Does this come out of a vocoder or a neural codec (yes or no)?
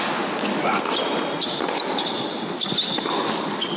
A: no